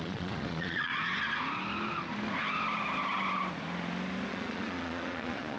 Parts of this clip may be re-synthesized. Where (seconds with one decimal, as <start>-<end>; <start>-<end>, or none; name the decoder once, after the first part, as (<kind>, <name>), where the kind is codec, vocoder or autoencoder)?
0.0-0.9 (vocoder, Vocos); 4.3-5.6